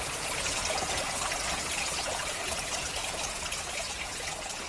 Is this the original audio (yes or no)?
no